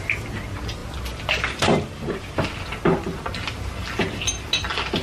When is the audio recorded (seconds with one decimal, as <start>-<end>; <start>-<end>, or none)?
0.0-5.0